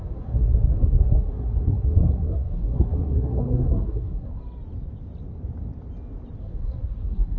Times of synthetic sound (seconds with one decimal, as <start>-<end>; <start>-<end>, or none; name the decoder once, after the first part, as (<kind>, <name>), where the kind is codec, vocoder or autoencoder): 0.0-4.4 (codec, SNAC); 6.4-7.4